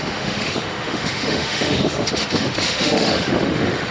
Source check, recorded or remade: remade